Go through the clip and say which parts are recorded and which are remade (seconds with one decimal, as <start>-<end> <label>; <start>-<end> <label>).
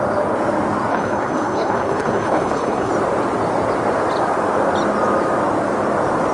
0.0-0.9 recorded; 0.9-2.9 remade; 2.9-6.3 recorded